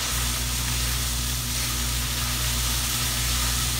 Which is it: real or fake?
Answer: real